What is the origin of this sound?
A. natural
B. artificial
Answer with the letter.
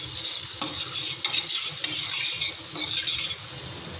A